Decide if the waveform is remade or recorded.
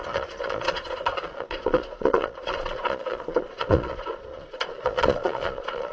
remade